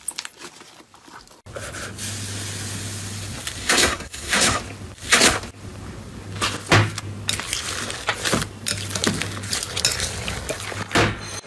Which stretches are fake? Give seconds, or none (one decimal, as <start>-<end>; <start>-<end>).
3.6-4.6